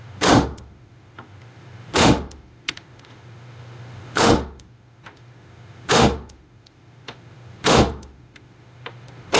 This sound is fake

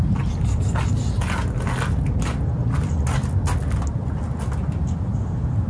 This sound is real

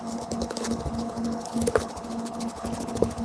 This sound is fake